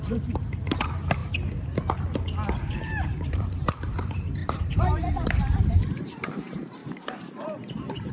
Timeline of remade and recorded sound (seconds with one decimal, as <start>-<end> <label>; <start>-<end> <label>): 0.0-1.2 remade; 1.2-2.8 recorded; 2.8-6.8 remade; 6.8-8.1 recorded